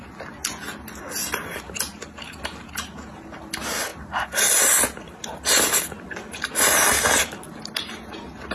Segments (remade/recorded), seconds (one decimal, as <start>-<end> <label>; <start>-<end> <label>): 0.0-8.5 recorded